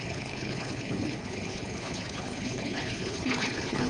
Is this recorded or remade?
remade